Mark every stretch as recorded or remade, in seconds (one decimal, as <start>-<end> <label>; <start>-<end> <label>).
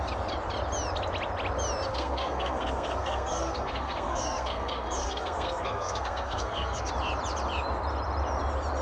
0.0-1.9 recorded; 1.9-6.9 remade; 6.9-8.8 recorded